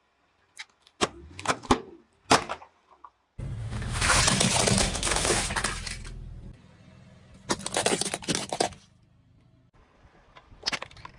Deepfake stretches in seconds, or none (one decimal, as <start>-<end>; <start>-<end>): 3.6-4.2; 4.8-5.5

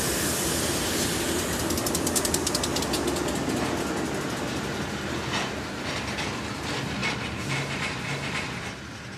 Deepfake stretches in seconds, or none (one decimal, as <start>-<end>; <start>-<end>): none

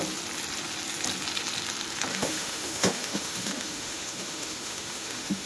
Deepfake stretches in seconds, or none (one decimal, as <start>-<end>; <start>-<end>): 2.1-5.5

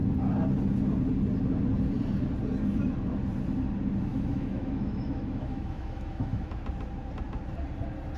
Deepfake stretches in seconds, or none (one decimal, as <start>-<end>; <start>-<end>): 4.1-6.6

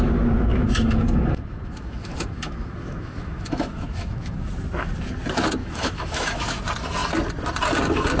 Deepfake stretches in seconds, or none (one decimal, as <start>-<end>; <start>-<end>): 0.5-4.5; 5.6-6.6

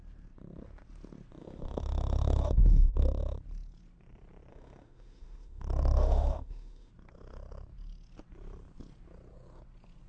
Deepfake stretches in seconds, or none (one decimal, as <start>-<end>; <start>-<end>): 1.4-3.2; 4.5-6.9